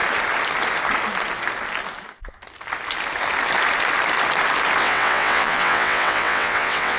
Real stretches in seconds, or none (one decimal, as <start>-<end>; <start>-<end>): 0.0-4.8